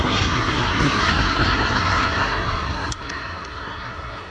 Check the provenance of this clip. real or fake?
fake